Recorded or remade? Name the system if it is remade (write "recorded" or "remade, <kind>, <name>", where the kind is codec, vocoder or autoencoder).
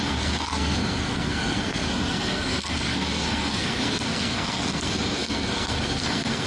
remade, codec, SNAC